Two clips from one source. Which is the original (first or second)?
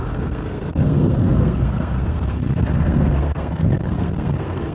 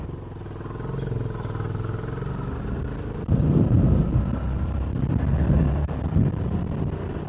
second